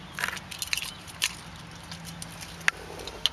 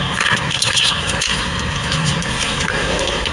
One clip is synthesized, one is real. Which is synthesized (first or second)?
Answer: second